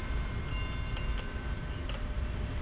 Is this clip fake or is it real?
real